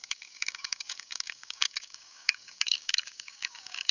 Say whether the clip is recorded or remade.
remade